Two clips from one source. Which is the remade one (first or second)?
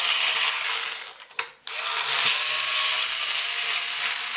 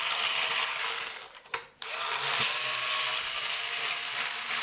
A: second